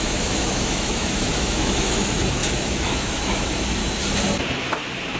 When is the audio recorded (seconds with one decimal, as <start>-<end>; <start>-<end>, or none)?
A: 3.8-5.2